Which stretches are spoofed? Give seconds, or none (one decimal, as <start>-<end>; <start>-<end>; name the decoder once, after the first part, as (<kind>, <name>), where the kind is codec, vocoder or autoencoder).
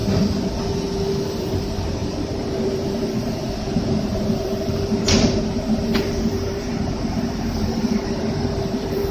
1.3-9.1 (vocoder, BigVGAN v2)